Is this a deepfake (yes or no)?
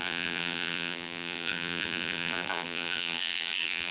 yes